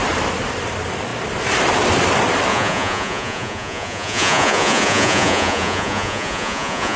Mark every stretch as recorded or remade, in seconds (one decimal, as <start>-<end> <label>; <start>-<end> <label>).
0.0-2.5 recorded; 2.5-7.0 remade